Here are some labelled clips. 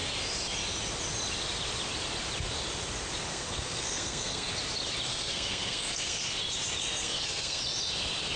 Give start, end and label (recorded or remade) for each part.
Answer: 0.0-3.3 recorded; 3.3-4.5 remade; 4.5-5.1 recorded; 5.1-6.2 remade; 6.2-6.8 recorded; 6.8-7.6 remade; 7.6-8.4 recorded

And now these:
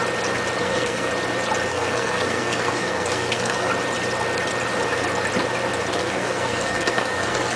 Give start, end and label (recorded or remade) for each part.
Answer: 0.0-0.6 recorded; 0.6-1.1 remade; 1.1-1.7 recorded; 1.7-3.7 remade; 3.7-5.9 recorded; 5.9-7.6 remade